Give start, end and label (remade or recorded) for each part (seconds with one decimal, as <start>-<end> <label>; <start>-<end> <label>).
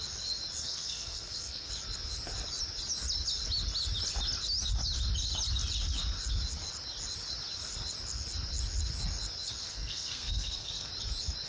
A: 0.0-0.6 recorded; 0.6-1.7 remade; 1.7-9.6 recorded; 9.6-10.9 remade; 10.9-11.5 recorded